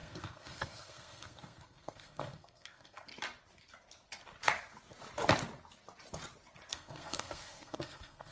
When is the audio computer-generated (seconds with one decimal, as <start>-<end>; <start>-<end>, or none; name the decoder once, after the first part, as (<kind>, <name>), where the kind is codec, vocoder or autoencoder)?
0.0-3.1 (codec, SNAC); 6.7-8.3